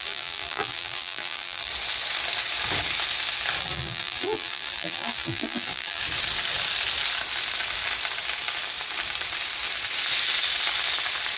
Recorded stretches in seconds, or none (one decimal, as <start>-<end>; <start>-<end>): 1.7-3.6; 6.0-11.4